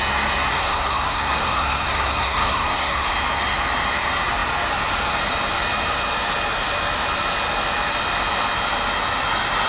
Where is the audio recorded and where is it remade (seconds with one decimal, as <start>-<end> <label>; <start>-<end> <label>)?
0.0-0.5 recorded; 0.5-3.1 remade; 3.1-9.7 recorded